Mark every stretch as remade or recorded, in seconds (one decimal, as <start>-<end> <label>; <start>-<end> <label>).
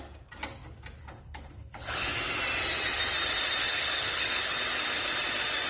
0.0-1.0 recorded; 1.0-2.1 remade; 2.1-3.6 recorded; 3.6-4.6 remade; 4.6-5.7 recorded